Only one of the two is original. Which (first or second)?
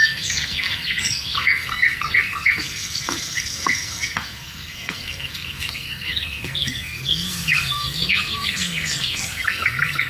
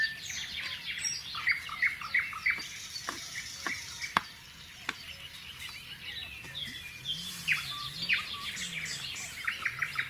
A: second